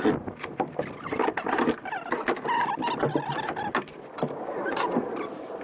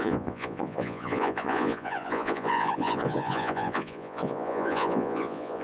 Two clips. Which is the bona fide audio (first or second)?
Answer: first